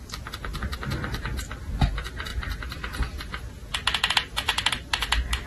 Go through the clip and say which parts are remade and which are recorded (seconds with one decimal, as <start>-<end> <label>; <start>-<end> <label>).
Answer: 0.0-5.5 recorded